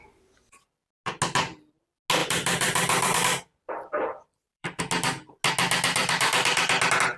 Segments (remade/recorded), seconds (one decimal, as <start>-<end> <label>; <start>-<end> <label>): 0.0-2.2 recorded; 2.2-4.8 remade; 4.8-6.0 recorded; 6.0-6.5 remade; 6.5-7.2 recorded